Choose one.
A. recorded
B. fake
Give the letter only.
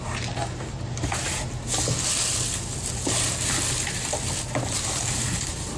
A